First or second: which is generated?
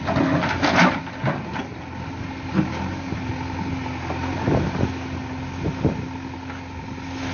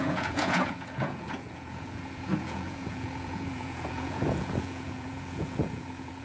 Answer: second